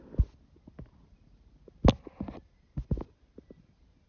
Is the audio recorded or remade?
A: recorded